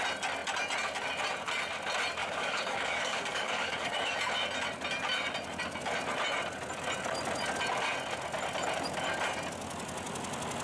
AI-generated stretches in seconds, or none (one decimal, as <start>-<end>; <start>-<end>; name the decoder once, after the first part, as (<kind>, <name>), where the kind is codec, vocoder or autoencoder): 2.2-4.1 (codec, DAC)

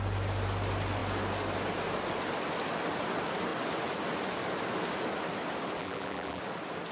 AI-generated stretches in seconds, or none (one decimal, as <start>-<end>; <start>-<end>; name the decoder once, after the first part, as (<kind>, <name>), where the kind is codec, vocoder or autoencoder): 5.8-6.4 (vocoder, BigVGAN v2)

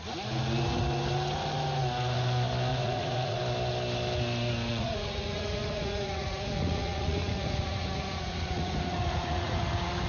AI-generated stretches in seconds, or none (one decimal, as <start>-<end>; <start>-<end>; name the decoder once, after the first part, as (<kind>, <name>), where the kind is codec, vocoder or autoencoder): 2.7-3.4 (vocoder, Vocos); 4.7-9.6